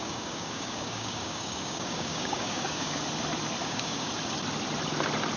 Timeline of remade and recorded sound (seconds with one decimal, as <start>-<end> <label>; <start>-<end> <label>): 0.0-3.0 remade; 3.0-3.6 recorded; 3.6-4.1 remade; 4.1-5.4 recorded